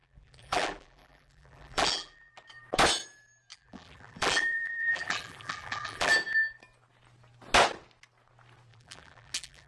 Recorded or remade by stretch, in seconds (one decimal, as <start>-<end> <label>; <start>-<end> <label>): 0.0-2.3 remade; 2.3-3.5 recorded; 3.5-6.1 remade; 6.1-8.7 recorded; 8.7-9.7 remade